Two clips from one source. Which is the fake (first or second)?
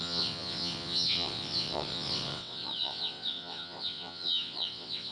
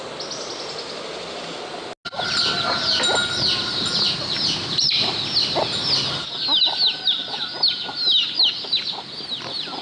first